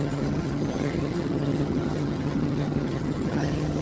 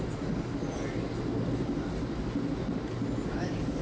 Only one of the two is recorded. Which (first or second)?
second